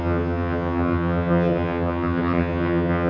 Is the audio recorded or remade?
remade